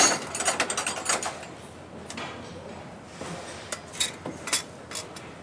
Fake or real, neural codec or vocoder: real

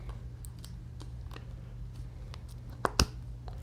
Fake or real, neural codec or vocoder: real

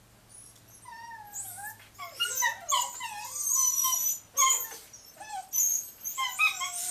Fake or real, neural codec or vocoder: real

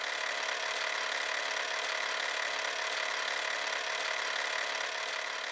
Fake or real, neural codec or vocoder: real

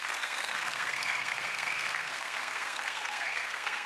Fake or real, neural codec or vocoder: fake, codec, SNAC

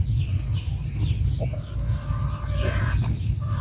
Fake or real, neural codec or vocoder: real